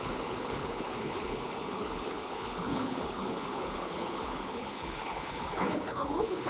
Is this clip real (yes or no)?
no